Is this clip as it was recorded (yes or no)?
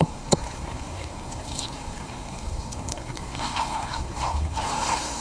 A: no